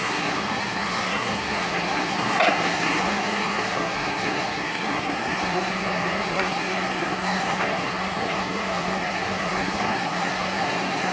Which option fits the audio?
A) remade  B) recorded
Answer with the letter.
A